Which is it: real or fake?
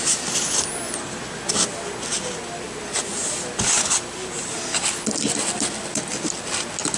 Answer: real